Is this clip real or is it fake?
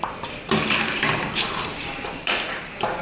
fake